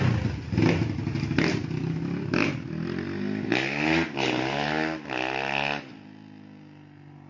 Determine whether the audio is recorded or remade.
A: recorded